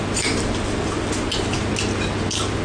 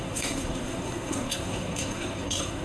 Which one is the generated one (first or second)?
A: second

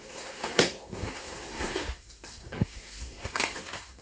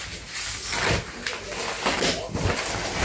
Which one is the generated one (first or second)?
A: first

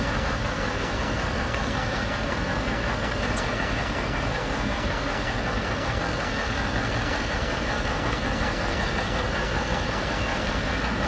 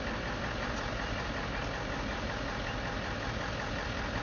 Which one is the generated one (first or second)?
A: first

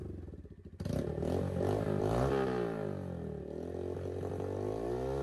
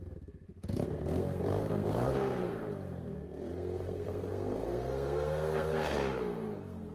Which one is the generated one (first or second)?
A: second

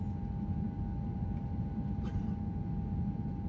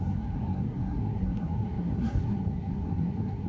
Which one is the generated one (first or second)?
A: second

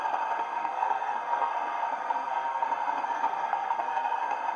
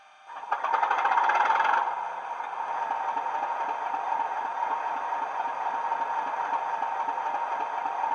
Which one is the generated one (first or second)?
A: first